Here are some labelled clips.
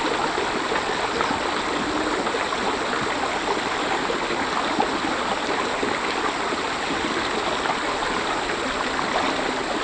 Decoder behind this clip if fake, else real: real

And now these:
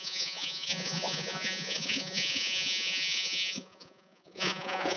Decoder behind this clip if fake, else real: fake, vocoder, Vocos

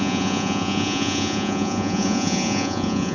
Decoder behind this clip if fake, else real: fake, vocoder, Vocos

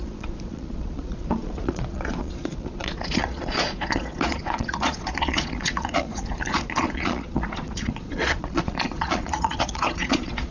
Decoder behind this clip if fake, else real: fake, vocoder, Vocos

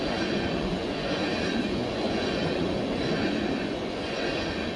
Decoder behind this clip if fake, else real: fake, vocoder, Vocos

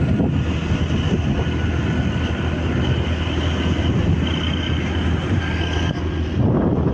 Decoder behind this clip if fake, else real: real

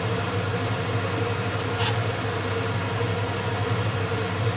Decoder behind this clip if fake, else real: real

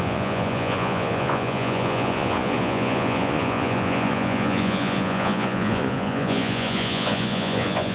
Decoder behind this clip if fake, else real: fake, vocoder, Vocos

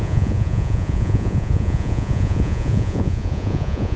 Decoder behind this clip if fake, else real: fake, vocoder, Vocos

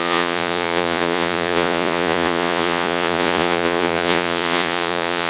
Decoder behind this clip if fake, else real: fake, vocoder, Vocos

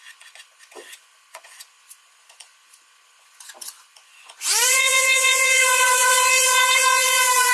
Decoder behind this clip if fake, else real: fake, vocoder, Vocos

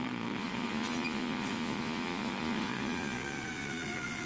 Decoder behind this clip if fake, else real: fake, vocoder, Vocos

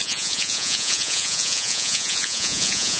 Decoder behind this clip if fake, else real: fake, vocoder, Vocos